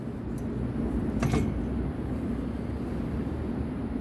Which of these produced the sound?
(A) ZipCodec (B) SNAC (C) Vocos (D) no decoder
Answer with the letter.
D